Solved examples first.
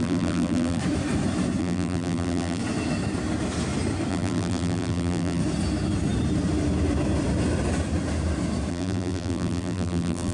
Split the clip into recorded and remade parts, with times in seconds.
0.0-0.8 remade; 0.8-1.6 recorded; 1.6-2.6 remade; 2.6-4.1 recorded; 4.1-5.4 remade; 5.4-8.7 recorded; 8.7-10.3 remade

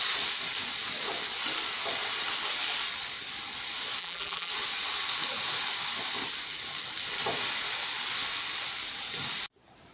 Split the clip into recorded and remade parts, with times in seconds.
0.0-4.0 recorded; 4.0-4.5 remade; 4.5-9.9 recorded

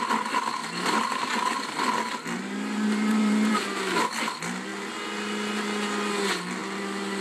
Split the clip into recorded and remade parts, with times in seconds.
0.0-0.6 recorded; 0.6-3.5 remade; 3.5-6.6 recorded; 6.6-7.2 remade

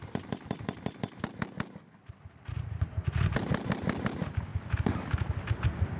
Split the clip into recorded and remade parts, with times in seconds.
0.0-6.0 recorded

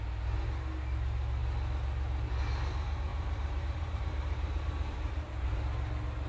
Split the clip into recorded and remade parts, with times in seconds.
0.0-3.1 recorded; 3.1-5.6 remade; 5.6-6.3 recorded

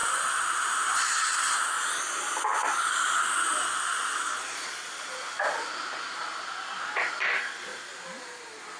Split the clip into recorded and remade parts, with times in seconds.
0.0-1.4 remade; 1.4-7.7 recorded; 7.7-8.2 remade; 8.2-8.8 recorded

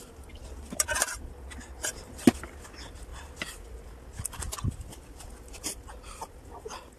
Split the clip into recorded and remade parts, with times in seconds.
0.0-0.4 recorded; 0.4-2.2 remade; 2.2-7.0 recorded

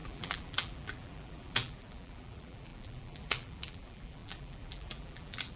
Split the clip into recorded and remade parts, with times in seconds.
0.0-5.6 remade